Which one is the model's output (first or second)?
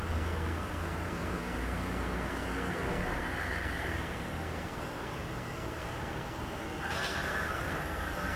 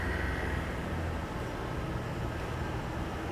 first